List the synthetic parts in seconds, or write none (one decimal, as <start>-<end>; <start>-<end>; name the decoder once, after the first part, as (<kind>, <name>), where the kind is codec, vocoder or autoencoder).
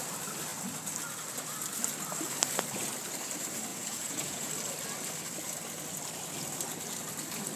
3.7-4.5 (vocoder, Vocos)